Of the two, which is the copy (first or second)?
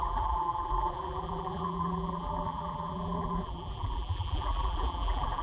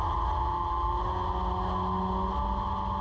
first